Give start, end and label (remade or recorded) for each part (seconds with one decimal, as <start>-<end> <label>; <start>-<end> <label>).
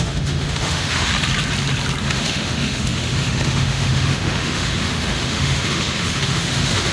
0.0-1.1 remade; 1.1-2.0 recorded; 2.0-6.9 remade